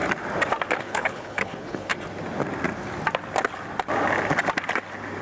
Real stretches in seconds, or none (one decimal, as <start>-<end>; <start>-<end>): 0.0-0.8; 1.9-5.2